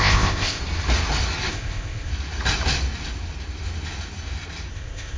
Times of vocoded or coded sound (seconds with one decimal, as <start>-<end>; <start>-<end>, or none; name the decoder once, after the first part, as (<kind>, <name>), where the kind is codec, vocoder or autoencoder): 0.0-0.6 (codec, ZipCodec); 1.5-2.1; 4.7-5.2

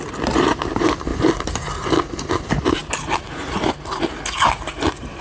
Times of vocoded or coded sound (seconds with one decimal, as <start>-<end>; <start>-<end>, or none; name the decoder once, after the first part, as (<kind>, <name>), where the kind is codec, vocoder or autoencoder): none

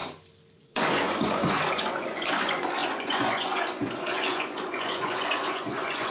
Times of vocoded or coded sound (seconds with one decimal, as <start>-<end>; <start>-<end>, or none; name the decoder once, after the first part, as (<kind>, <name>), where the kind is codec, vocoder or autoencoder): 0.6-6.1 (vocoder, Vocos)

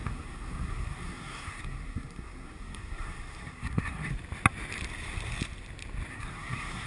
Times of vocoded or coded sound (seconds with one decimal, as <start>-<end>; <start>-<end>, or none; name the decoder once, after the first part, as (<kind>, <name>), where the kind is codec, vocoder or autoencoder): 0.0-4.1 (codec, SNAC); 6.1-6.9

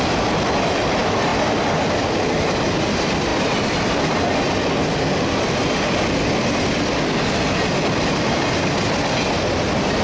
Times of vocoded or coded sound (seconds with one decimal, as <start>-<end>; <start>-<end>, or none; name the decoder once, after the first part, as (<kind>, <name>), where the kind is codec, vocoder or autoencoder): none

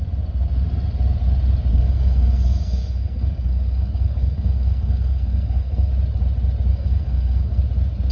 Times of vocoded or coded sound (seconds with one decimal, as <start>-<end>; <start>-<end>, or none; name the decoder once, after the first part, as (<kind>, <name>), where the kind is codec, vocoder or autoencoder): 1.7-5.9 (codec, SNAC); 6.7-7.6

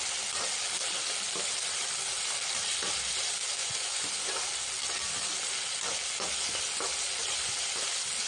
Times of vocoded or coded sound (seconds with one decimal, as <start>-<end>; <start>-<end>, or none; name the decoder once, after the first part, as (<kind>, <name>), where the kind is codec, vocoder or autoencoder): 3.6-4.3 (vocoder, Vocos)

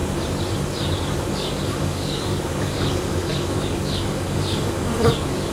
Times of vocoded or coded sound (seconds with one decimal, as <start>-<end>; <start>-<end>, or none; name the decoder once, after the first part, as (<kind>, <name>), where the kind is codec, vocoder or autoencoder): 1.3-5.5 (codec, DAC)